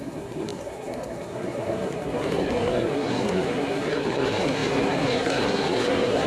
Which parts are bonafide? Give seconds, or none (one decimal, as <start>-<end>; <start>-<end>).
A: none